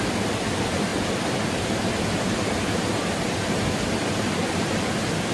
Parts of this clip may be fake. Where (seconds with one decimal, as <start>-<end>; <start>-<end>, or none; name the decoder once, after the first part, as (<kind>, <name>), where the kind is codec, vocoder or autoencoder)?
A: none